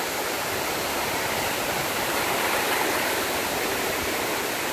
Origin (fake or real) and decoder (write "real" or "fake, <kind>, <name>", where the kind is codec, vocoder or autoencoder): real